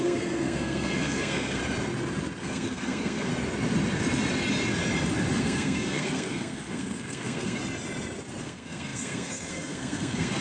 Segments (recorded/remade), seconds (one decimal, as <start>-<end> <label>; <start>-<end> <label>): 0.0-1.6 remade; 1.6-2.4 recorded; 2.4-3.3 remade; 3.3-5.4 recorded; 5.4-7.6 remade; 7.6-8.4 recorded; 8.4-10.4 remade